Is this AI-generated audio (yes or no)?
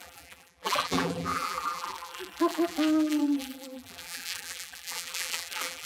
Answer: yes